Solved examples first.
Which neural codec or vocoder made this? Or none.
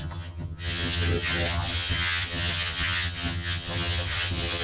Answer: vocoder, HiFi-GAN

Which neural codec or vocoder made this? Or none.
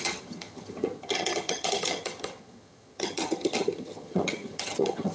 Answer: vocoder, HiFi-GAN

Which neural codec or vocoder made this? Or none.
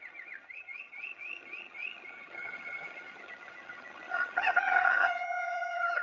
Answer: vocoder, HiFi-GAN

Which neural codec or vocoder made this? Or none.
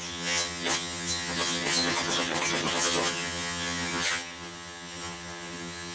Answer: vocoder, HiFi-GAN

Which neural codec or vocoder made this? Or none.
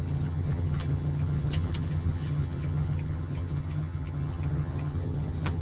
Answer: vocoder, HiFi-GAN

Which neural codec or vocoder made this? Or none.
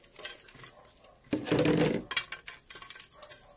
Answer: none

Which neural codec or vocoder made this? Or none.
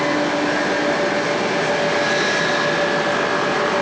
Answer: none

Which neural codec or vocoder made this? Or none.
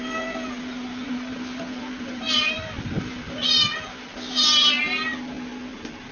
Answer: none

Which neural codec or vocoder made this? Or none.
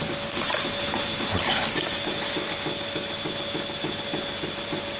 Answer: none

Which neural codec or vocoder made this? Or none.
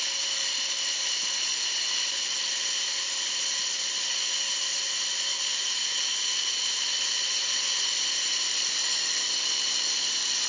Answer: none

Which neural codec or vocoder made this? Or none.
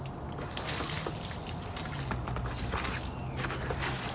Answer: none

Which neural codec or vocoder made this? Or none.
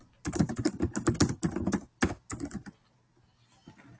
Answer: none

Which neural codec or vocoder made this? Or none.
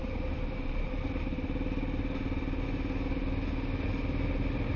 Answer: none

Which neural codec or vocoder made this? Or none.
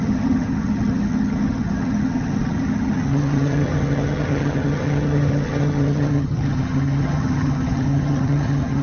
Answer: vocoder, HiFi-GAN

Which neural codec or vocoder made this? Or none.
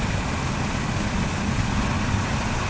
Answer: none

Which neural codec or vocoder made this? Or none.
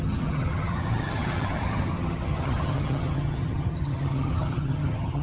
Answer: vocoder, HiFi-GAN